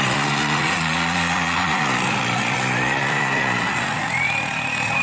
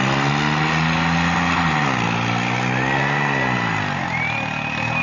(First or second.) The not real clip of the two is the first